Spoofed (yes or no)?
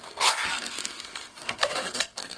yes